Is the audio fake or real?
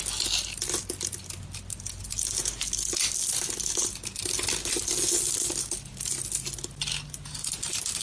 real